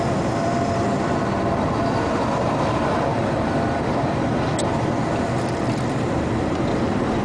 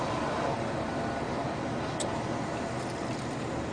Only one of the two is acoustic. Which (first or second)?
second